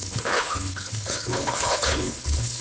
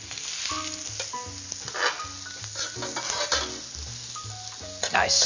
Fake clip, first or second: first